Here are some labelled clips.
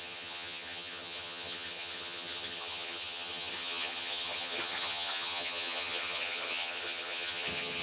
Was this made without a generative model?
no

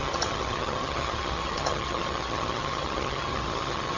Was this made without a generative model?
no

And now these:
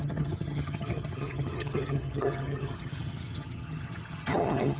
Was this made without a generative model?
no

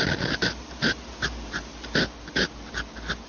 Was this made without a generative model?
yes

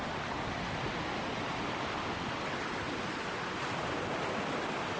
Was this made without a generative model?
yes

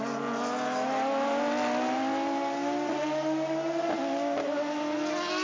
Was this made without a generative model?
yes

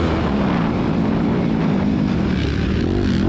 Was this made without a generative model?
yes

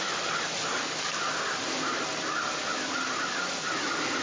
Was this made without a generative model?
yes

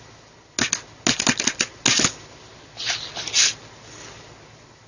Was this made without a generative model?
yes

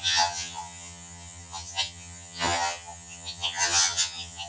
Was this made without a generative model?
no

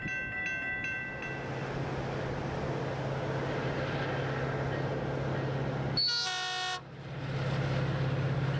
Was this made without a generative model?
yes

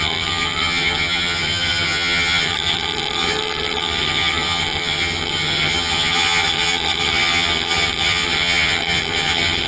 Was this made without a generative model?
no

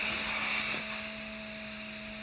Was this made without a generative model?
yes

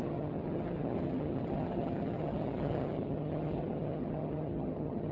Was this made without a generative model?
no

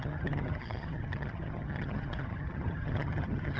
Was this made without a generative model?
no